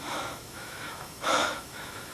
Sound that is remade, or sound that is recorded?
remade